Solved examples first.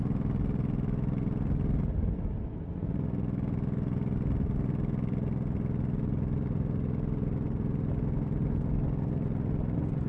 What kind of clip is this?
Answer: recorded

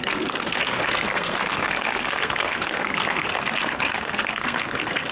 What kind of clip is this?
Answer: remade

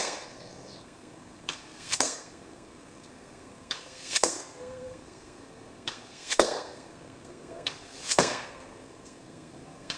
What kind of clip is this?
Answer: remade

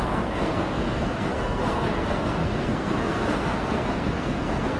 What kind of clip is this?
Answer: remade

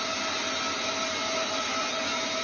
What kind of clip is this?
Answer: recorded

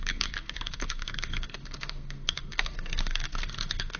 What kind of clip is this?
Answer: remade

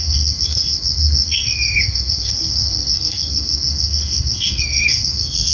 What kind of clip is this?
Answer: remade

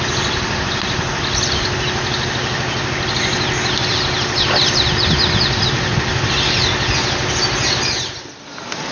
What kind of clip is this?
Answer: recorded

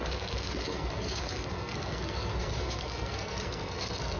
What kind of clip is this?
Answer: remade